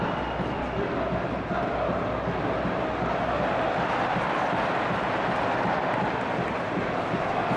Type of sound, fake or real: real